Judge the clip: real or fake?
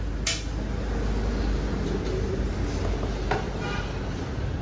real